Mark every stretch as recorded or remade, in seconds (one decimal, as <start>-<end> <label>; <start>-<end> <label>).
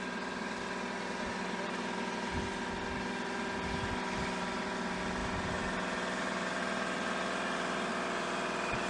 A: 0.0-8.9 recorded